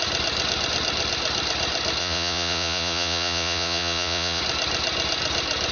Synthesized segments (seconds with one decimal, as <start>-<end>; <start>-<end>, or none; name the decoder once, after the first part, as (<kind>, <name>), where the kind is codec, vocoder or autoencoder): 2.0-4.4 (vocoder, Vocos)